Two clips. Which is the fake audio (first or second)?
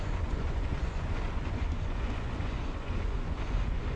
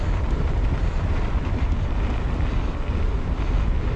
first